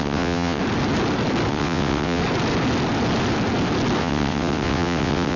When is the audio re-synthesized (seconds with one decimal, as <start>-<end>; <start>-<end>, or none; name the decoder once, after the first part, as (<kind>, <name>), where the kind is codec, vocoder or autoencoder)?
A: 0.0-0.6 (vocoder, WaveNeXt); 1.5-2.2; 4.0-5.4

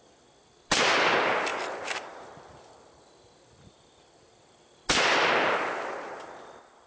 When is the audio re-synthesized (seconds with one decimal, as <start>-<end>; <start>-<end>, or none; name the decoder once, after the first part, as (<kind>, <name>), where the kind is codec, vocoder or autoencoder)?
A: none

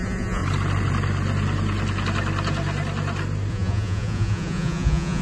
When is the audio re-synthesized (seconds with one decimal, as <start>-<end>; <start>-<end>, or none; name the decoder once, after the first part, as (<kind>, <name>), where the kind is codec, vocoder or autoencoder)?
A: 0.0-0.4 (vocoder, Vocos); 3.5-5.2

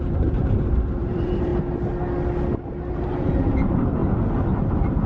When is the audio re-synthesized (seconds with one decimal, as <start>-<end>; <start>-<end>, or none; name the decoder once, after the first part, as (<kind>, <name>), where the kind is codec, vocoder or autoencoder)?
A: 0.0-1.5 (vocoder, BigVGAN v2); 2.9-4.0; 4.6-5.1

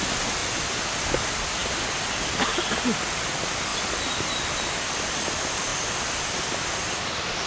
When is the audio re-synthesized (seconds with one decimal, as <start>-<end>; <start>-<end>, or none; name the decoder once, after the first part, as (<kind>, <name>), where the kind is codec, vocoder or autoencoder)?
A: 0.0-5.7 (vocoder, BigVGAN v2); 6.6-7.5

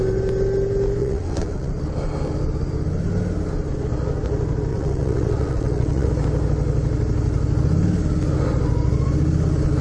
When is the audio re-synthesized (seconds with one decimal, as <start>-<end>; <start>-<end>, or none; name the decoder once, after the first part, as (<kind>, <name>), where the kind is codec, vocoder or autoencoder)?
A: 1.0-1.7 (vocoder, WaveNeXt); 4.7-6.1

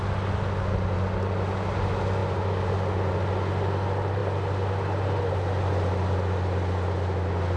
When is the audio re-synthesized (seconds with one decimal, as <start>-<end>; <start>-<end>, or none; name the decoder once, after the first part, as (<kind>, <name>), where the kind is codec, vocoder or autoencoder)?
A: none

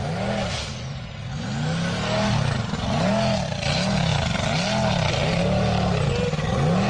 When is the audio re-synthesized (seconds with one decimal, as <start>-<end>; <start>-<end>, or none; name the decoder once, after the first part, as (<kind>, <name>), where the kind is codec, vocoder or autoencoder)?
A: none